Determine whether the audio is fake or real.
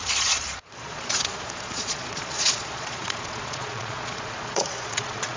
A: fake